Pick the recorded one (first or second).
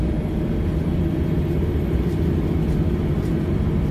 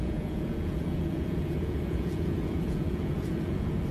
first